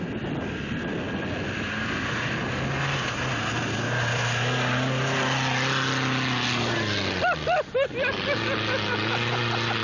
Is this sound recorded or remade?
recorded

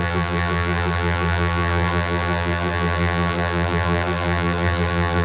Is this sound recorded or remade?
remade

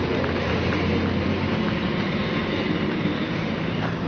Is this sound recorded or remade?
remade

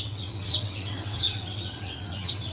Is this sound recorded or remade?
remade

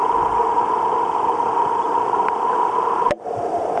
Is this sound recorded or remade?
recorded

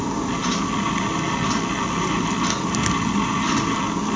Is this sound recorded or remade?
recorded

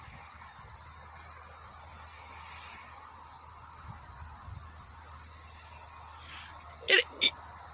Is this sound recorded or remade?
recorded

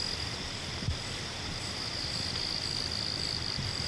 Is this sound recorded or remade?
recorded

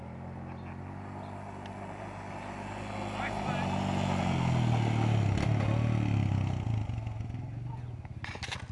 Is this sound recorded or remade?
recorded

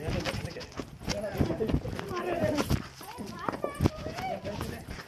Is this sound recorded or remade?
recorded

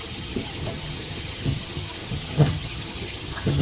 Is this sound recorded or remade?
remade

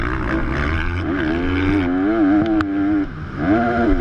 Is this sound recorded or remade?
recorded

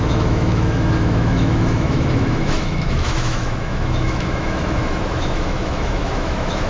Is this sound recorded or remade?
remade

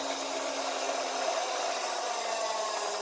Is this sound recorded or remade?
recorded